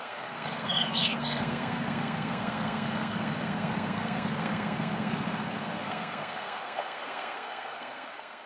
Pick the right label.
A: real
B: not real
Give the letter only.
B